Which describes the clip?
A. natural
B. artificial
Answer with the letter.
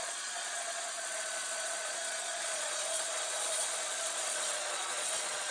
B